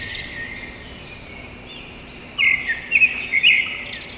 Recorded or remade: recorded